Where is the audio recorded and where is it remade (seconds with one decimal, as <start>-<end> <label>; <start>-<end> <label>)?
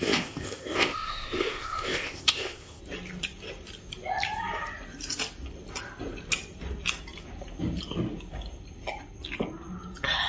0.0-2.8 remade; 2.8-10.3 recorded